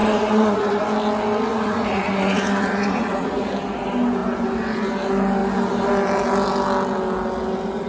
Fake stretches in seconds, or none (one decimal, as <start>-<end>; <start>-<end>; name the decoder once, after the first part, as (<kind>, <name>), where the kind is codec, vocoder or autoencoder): 0.0-0.8 (vocoder, Vocos); 1.5-3.5